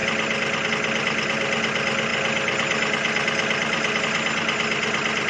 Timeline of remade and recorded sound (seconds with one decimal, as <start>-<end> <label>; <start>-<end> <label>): 0.0-5.3 recorded